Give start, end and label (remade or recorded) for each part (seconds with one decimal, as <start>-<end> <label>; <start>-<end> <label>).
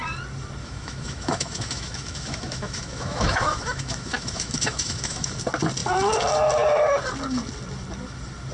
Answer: 0.0-0.6 recorded; 0.6-5.3 remade; 5.3-8.5 recorded